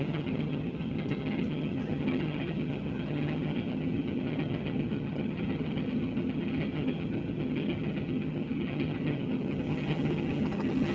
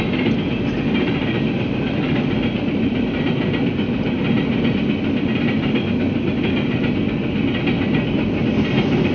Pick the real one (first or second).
second